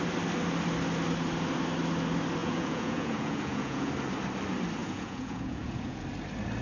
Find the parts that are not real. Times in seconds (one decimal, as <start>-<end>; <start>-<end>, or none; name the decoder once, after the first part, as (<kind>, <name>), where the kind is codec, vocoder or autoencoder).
2.4-3.9 (vocoder, Vocos); 4.8-6.0